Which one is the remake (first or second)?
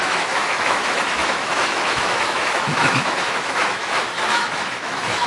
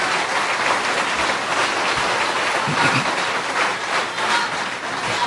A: first